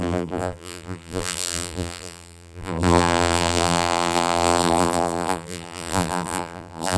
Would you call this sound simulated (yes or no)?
yes